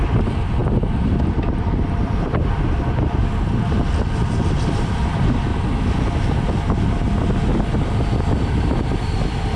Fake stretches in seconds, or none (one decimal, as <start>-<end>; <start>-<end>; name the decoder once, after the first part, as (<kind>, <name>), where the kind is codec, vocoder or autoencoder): 0.0-3.2 (vocoder, BigVGAN v2); 4.6-5.5; 8.6-9.6